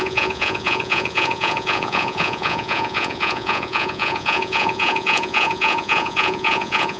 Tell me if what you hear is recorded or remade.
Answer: remade